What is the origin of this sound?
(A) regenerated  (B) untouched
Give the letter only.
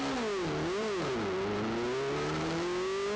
B